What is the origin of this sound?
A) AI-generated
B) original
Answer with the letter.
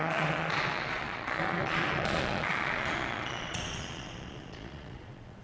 A